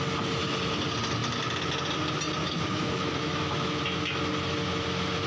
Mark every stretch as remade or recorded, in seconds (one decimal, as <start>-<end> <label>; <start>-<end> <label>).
0.0-2.4 recorded; 2.4-3.8 remade; 3.8-5.3 recorded